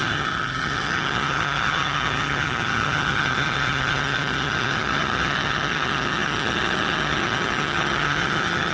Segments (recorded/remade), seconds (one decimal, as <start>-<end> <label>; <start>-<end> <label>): 0.0-8.7 remade